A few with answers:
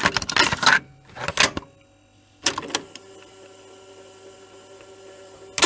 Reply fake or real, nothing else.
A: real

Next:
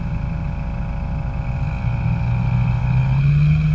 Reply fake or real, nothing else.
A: real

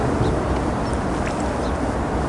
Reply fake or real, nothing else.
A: real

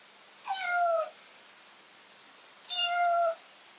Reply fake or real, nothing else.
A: real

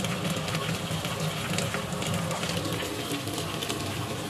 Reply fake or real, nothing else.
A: real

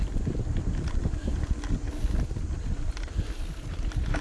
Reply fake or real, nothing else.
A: real